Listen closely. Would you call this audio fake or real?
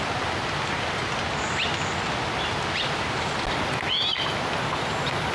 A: real